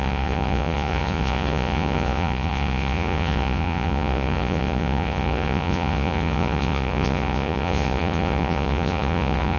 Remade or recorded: remade